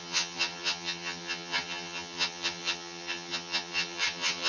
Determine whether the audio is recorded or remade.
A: remade